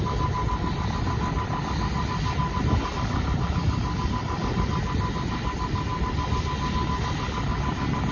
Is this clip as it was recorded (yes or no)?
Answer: yes